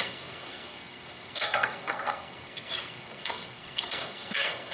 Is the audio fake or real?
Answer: fake